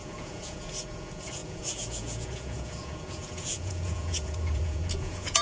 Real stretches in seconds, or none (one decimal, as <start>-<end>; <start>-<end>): none